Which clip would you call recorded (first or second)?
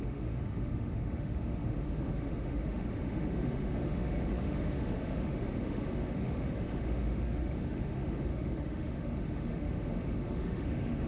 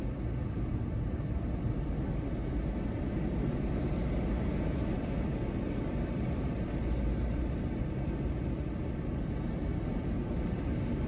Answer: second